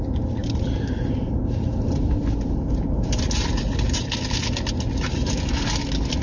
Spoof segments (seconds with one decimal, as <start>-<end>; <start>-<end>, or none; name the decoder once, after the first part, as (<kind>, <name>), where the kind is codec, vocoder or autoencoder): 0.4-4.1 (vocoder, BigVGAN v2)